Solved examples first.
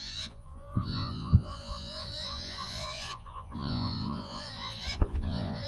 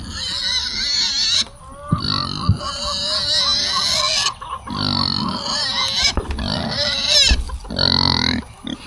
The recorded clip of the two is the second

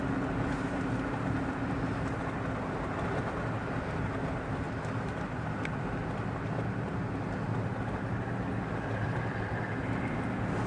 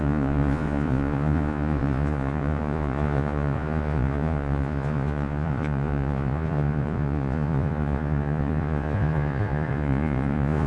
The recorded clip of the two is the first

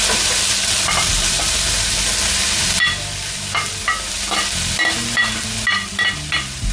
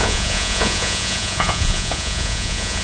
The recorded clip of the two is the first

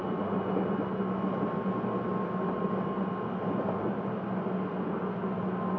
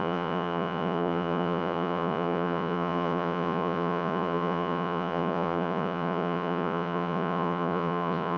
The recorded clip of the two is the first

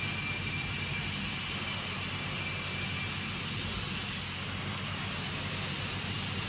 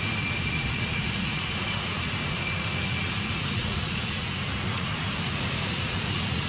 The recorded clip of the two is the first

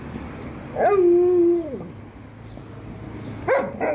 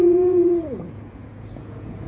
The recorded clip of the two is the first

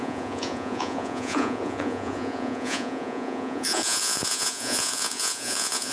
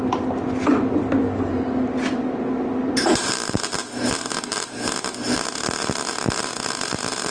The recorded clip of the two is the second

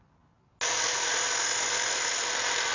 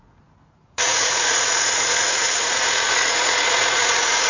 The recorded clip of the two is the first